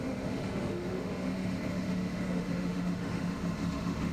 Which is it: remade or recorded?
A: remade